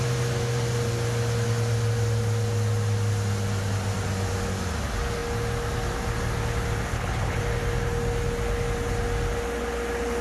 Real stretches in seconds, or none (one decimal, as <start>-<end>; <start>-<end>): 0.0-6.9; 7.4-10.2